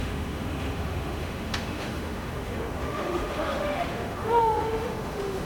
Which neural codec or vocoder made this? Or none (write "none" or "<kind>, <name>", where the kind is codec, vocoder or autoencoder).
autoencoder, DAC-VAE